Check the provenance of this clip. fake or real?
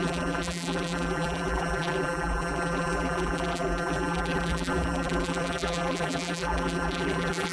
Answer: fake